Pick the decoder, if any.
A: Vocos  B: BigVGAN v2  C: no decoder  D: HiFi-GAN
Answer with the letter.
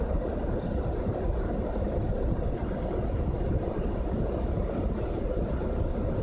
C